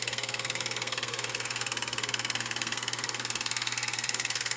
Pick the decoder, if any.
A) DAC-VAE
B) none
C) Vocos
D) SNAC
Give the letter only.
D